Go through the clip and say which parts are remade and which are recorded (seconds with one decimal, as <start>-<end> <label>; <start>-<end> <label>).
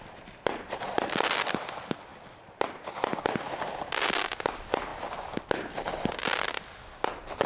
0.0-7.5 recorded